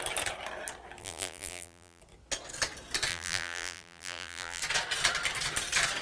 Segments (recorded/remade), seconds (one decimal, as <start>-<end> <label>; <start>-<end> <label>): 0.0-1.0 recorded; 1.0-2.0 remade; 2.0-3.1 recorded; 3.1-4.6 remade; 4.6-6.0 recorded